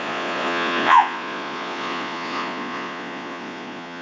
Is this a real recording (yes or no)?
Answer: no